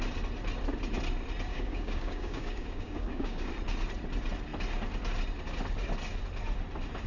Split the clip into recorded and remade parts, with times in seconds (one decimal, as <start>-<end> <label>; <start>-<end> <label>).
0.0-1.5 recorded; 1.5-3.5 remade; 3.5-7.1 recorded